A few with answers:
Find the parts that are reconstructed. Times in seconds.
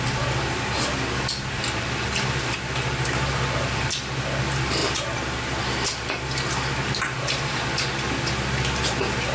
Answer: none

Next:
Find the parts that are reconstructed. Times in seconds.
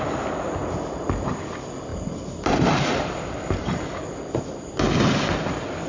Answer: 1.9-4.7 (vocoder, BigVGAN v2)